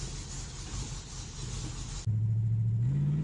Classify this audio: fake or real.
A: real